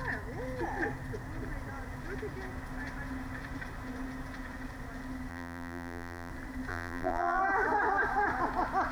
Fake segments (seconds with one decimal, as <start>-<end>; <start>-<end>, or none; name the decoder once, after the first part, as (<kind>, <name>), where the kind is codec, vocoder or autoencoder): 5.3-6.3 (vocoder, BigVGAN v2); 6.7-7.4